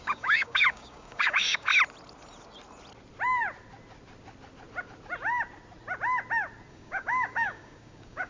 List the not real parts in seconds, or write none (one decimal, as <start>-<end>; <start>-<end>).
0.0-1.7; 6.7-8.3